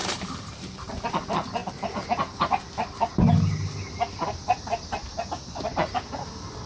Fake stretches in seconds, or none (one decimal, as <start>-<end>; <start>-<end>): 0.0-0.9